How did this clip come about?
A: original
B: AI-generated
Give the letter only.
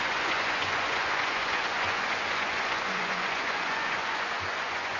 B